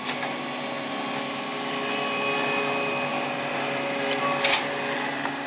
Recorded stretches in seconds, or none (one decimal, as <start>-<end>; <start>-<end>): 0.0-5.5